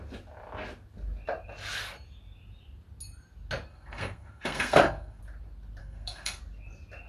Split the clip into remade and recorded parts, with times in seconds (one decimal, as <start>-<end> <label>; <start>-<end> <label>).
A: 0.0-3.7 recorded; 3.7-5.2 remade; 5.2-5.8 recorded; 5.8-6.4 remade; 6.4-7.1 recorded